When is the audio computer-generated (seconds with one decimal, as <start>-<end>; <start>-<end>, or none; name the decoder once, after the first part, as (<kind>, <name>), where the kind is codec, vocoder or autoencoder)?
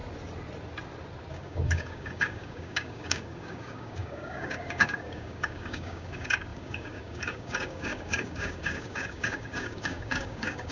1.3-10.7 (codec, DAC)